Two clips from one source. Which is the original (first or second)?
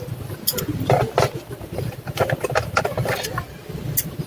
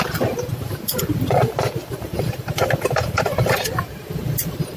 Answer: first